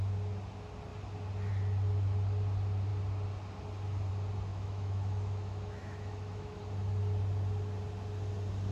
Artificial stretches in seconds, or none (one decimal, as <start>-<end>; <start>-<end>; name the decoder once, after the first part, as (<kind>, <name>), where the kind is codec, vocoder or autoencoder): 4.5-6.6 (autoencoder, DAC-VAE)

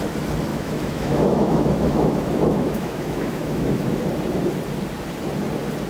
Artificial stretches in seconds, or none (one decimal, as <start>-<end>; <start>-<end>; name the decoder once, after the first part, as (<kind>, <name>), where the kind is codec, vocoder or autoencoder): 0.5-4.0 (autoencoder, DAC-VAE)